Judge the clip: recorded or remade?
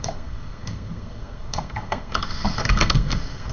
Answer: remade